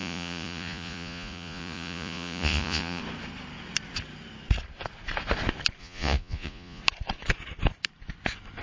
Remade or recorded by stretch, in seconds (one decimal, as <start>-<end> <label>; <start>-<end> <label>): 0.0-3.0 remade; 3.0-5.8 recorded; 5.8-6.8 remade; 6.8-8.6 recorded